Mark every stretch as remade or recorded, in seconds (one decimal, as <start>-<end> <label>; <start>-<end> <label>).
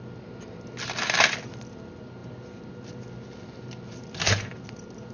0.0-5.1 recorded